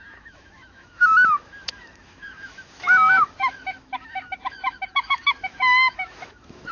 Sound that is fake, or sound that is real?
fake